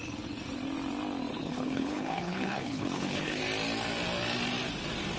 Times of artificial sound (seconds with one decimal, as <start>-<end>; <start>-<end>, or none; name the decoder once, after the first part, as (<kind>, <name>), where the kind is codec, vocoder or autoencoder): 1.3-3.4 (codec, HILCodec)